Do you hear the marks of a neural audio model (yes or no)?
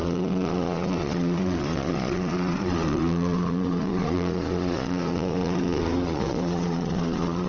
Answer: yes